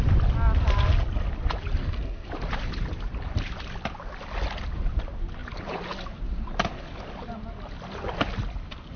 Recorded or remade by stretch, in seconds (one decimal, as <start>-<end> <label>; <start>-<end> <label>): 0.0-1.8 recorded; 1.8-2.3 remade; 2.3-9.0 recorded